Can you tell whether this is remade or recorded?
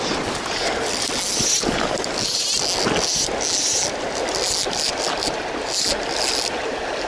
recorded